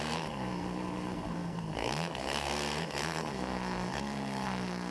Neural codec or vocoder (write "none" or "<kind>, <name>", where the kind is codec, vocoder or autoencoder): codec, SNAC